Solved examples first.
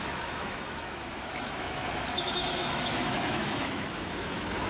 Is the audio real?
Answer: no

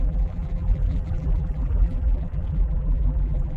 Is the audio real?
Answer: no